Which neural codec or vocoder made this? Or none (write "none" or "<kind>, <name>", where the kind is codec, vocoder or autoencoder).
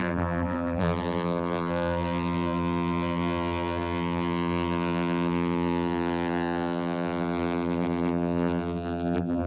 vocoder, BigVGAN v2